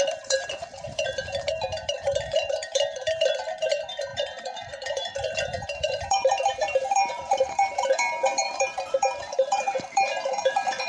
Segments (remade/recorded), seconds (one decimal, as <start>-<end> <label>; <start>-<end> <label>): 0.0-10.9 remade